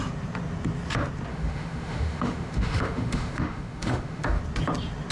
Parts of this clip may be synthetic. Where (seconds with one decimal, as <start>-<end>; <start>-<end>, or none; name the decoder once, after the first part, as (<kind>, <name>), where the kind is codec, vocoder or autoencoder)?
1.3-4.4 (autoencoder, DAC-VAE)